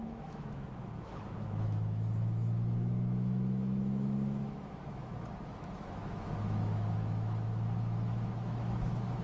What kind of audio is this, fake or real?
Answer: fake